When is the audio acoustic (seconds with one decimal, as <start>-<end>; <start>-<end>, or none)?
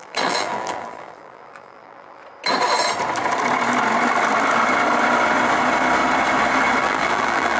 2.2-6.8